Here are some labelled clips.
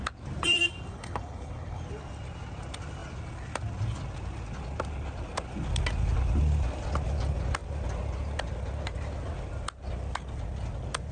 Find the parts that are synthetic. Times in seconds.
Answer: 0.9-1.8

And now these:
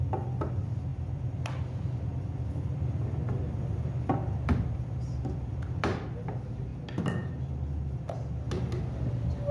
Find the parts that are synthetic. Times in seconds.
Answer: none